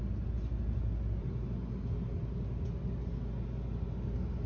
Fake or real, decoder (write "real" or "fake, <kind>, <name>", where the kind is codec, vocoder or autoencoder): real